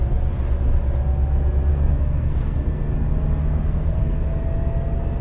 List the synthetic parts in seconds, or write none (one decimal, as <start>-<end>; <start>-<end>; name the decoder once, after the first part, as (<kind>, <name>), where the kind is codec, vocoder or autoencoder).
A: 1.7-2.9 (codec, SNAC); 3.4-4.2